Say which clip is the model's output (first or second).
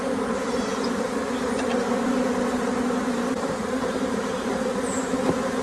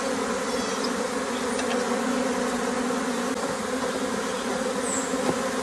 first